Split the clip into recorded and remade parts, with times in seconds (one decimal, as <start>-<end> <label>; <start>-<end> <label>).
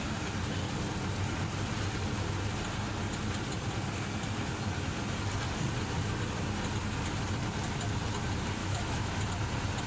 0.0-8.6 recorded; 8.6-9.2 remade; 9.2-9.9 recorded